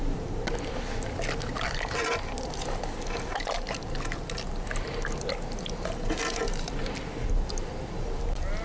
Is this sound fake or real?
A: real